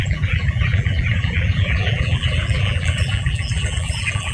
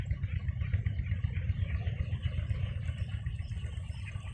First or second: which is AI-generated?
first